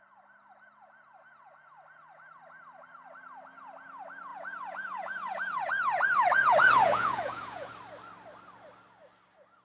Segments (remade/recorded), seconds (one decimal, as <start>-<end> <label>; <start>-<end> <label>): 0.0-4.3 recorded; 4.3-7.7 remade; 7.7-9.6 recorded